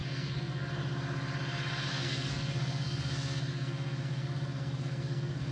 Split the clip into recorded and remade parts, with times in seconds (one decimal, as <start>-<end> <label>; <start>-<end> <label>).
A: 0.0-0.7 remade; 0.7-1.9 recorded; 1.9-5.5 remade